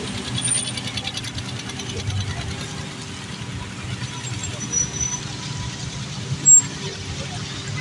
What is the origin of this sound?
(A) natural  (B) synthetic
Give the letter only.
A